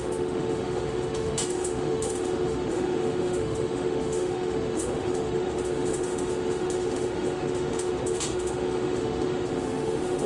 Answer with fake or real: fake